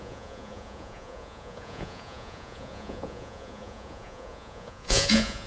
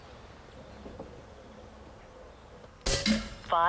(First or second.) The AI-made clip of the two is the first